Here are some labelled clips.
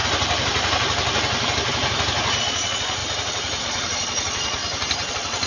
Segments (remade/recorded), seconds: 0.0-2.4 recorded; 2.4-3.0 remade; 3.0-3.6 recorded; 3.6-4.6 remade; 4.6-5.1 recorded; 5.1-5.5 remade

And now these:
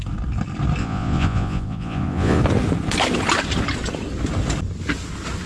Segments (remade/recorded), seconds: 0.0-0.8 recorded; 0.8-2.4 remade; 2.4-5.5 recorded

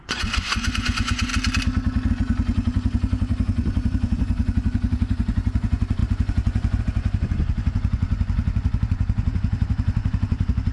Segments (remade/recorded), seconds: 0.0-1.3 remade; 1.3-2.1 recorded; 2.1-10.7 remade

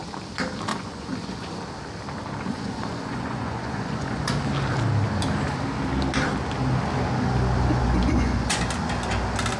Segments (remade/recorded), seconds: 0.0-0.7 recorded; 0.7-1.6 remade; 1.6-2.5 recorded; 2.5-4.3 remade; 4.3-7.8 recorded; 7.8-8.6 remade; 8.6-9.6 recorded

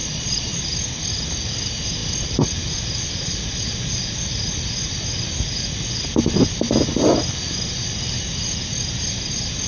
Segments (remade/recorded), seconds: 0.0-0.6 remade; 0.6-9.7 recorded

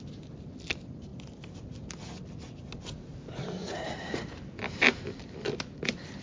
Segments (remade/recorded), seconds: 0.0-3.6 recorded; 3.6-4.4 remade; 4.4-6.2 recorded

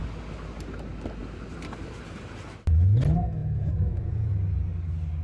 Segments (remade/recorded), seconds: 0.0-3.4 recorded; 3.4-4.3 remade; 4.3-5.2 recorded